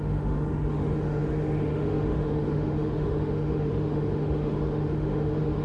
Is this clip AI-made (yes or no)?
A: yes